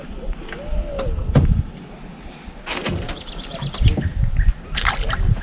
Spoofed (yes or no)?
no